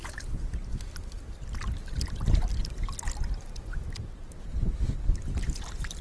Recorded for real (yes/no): yes